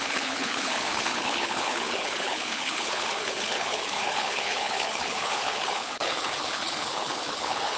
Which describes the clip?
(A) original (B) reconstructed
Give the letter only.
B